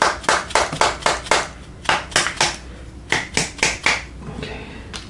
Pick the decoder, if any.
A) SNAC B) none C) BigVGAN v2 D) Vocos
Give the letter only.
B